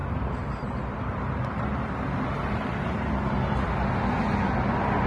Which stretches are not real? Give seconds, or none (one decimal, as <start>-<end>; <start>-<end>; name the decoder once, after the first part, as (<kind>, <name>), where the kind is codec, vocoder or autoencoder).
0.0-3.1 (vocoder, BigVGAN v2)